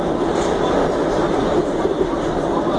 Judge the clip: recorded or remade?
recorded